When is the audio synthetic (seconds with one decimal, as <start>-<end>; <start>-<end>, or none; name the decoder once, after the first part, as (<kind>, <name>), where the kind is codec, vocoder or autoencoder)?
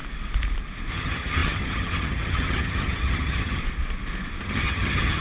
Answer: 0.9-3.6 (vocoder, HiFi-GAN); 4.4-5.2